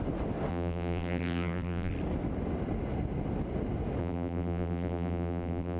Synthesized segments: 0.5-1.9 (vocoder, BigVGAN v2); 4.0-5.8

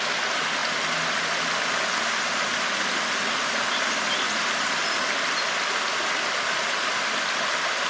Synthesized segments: none